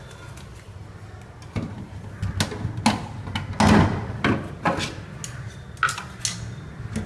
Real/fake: real